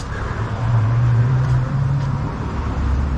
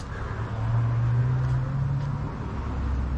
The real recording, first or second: second